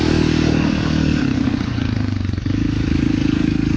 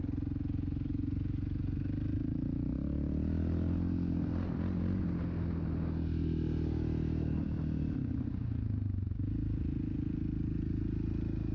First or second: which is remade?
first